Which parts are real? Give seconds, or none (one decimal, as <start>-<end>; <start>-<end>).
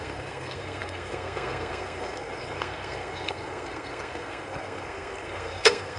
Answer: none